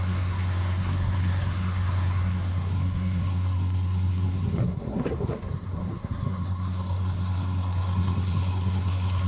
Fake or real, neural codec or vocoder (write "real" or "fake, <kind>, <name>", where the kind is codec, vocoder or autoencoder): fake, codec, SNAC